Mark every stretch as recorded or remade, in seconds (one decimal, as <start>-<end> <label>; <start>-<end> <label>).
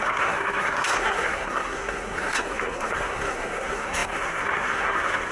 0.0-5.3 remade